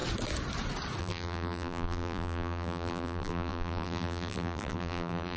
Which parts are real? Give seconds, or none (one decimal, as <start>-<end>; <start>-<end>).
0.0-1.0